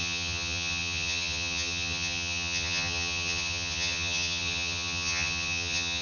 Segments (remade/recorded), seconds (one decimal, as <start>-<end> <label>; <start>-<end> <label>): 0.0-6.0 remade